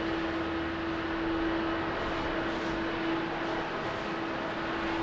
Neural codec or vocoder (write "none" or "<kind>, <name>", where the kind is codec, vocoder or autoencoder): none